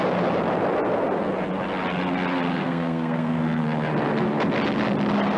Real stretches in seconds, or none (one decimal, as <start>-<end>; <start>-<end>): 0.0-2.6; 3.6-5.4